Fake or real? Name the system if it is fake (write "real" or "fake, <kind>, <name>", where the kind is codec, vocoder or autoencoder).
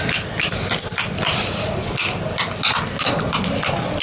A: real